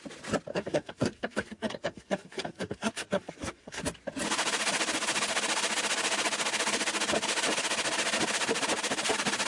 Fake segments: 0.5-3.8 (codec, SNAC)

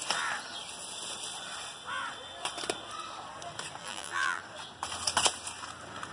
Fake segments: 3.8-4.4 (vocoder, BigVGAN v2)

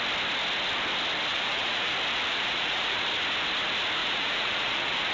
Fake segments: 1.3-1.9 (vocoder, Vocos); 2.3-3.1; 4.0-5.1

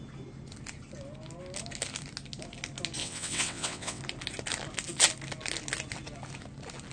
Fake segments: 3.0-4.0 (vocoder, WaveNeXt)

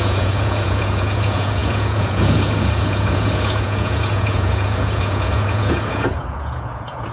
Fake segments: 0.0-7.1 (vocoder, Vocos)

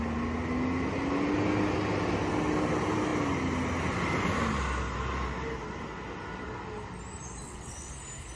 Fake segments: 7.4-7.9 (vocoder, WaveNeXt)

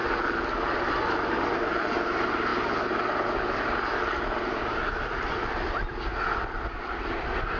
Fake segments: none